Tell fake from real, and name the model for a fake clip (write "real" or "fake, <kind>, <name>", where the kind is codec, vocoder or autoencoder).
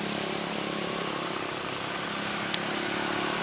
real